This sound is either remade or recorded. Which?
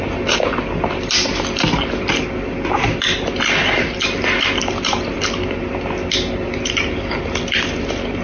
recorded